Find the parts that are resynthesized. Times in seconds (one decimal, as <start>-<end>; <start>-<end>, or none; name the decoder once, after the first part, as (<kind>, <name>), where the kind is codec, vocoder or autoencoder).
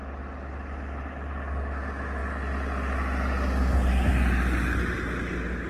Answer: none